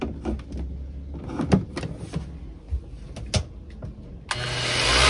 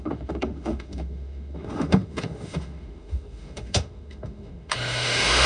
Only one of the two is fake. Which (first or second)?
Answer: second